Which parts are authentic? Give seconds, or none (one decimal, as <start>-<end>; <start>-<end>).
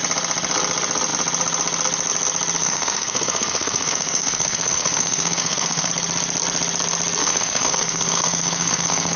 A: 0.0-2.6; 5.9-7.2